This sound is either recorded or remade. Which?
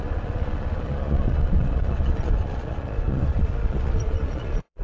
remade